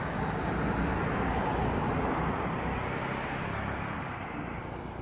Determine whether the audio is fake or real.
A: real